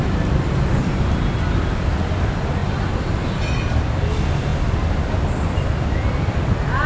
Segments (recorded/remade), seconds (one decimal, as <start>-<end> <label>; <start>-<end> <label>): 0.0-2.6 recorded; 2.6-3.1 remade; 3.1-4.5 recorded; 4.5-5.9 remade; 5.9-6.9 recorded